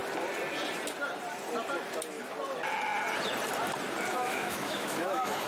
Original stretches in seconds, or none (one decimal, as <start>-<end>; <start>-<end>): 0.0-4.1